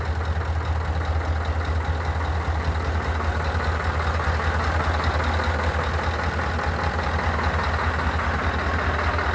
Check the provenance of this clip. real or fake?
real